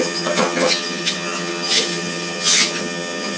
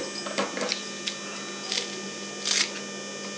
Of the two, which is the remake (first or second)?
first